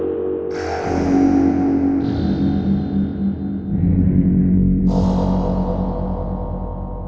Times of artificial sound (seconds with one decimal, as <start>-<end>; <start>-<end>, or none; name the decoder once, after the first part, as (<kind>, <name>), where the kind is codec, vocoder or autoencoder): 3.9-4.8 (codec, SNAC)